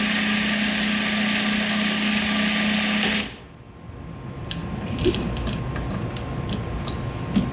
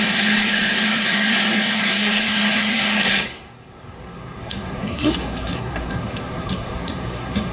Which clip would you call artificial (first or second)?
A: second